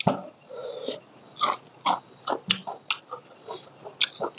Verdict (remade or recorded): recorded